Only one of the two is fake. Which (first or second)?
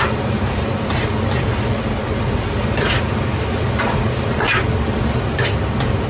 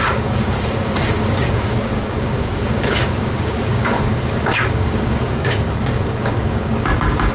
second